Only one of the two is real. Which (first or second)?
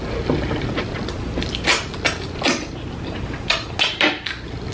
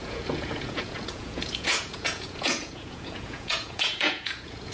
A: first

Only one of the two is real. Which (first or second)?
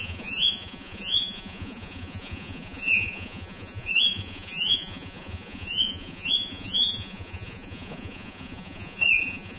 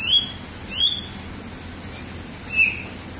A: second